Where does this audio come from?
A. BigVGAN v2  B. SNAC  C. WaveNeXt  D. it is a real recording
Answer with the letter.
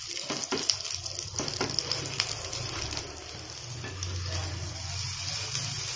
D